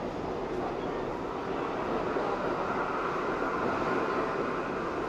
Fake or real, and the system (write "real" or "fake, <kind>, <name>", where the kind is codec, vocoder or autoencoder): real